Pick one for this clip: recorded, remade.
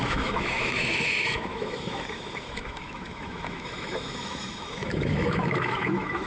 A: remade